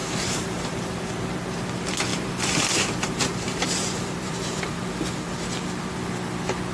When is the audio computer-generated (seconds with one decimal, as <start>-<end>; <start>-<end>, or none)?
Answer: 0.0-1.1; 2.1-4.6